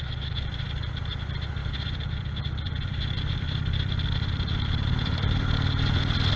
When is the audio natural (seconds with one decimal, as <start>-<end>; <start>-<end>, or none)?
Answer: 0.0-1.6; 5.4-6.4